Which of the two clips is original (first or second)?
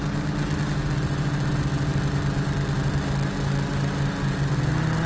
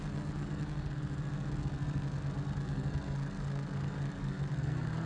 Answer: first